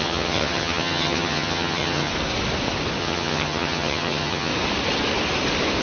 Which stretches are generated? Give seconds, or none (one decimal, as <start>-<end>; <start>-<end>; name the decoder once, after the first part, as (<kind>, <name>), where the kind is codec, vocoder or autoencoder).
0.0-2.1 (vocoder, HiFi-GAN); 3.0-4.5